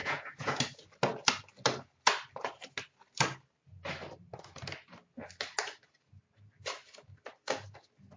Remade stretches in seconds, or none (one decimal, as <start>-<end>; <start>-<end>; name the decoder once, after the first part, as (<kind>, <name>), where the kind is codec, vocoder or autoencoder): 0.0-0.6 (vocoder, Vocos)